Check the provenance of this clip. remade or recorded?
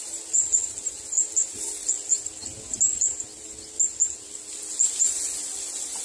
recorded